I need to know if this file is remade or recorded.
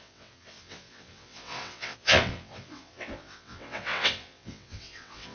remade